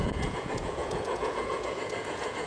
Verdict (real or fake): fake